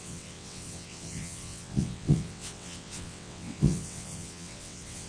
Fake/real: fake